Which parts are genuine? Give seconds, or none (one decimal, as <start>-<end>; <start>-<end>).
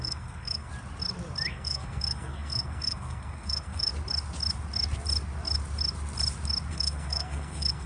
0.7-1.5; 3.9-6.7